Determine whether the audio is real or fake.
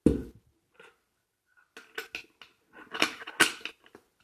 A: real